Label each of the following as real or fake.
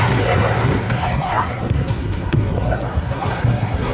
fake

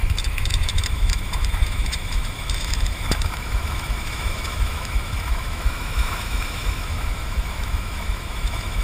fake